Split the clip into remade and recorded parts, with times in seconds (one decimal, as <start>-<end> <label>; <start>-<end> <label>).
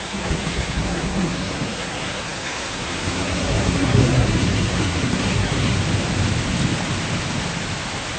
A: 0.0-5.8 remade; 5.8-8.2 recorded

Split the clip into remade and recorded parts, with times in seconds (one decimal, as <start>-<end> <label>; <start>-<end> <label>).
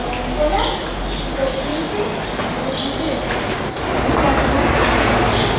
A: 0.0-5.6 recorded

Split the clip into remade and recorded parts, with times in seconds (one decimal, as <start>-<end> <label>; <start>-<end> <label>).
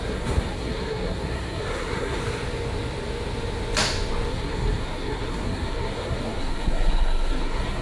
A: 0.0-2.2 remade; 2.2-4.3 recorded; 4.3-7.8 remade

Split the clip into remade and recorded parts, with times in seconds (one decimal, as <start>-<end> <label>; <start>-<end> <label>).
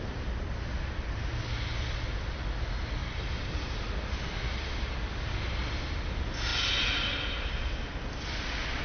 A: 0.0-0.7 recorded; 0.7-1.5 remade; 1.5-3.0 recorded; 3.0-3.9 remade; 3.9-8.8 recorded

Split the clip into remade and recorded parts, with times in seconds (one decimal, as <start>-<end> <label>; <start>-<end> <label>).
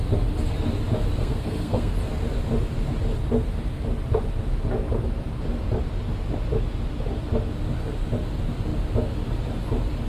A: 0.0-1.2 recorded; 1.2-1.9 remade; 1.9-10.1 recorded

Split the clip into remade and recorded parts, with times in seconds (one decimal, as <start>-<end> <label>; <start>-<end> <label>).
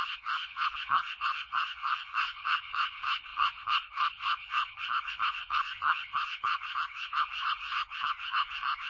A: 0.0-8.9 remade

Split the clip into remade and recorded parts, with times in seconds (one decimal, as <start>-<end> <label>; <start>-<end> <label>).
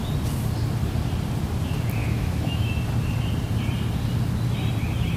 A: 0.0-2.0 recorded; 2.0-2.7 remade; 2.7-5.2 recorded